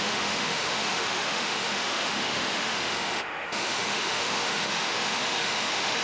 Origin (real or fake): fake